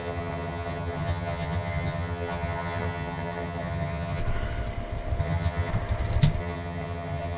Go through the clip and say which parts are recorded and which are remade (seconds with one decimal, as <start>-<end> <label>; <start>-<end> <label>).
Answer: 0.0-4.2 remade; 4.2-5.2 recorded; 5.2-5.7 remade; 5.7-6.4 recorded; 6.4-7.4 remade